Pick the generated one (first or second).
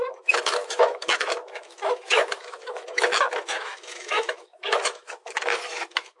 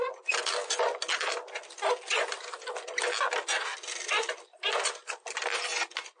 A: first